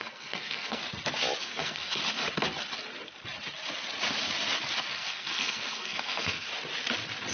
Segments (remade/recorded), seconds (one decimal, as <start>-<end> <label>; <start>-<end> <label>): 0.0-0.8 remade; 0.8-1.4 recorded; 1.4-2.0 remade; 2.0-4.9 recorded; 4.9-6.5 remade; 6.5-7.3 recorded

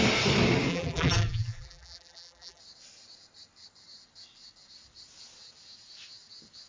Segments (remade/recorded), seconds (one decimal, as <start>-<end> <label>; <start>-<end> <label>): 0.0-0.7 recorded; 0.7-2.6 remade; 2.6-6.7 recorded

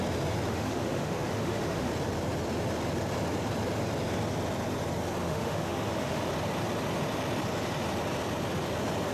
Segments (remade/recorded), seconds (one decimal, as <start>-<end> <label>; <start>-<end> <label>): 0.0-0.5 recorded; 0.5-1.9 remade; 1.9-5.2 recorded; 5.2-6.3 remade; 6.3-9.1 recorded

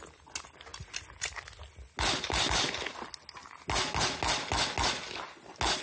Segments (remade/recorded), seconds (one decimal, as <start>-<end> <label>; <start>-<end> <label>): 0.0-5.8 recorded

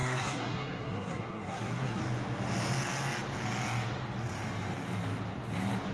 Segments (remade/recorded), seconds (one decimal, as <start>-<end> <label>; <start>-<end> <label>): 0.0-2.0 remade; 2.0-5.9 recorded

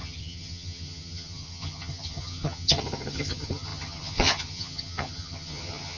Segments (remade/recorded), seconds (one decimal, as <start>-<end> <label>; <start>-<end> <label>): 0.0-6.0 remade

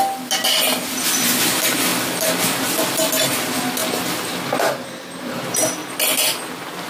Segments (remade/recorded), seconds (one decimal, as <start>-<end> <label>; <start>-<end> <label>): 0.0-6.9 recorded